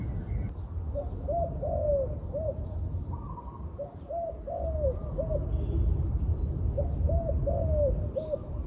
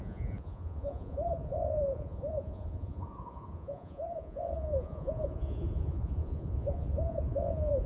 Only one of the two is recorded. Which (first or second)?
first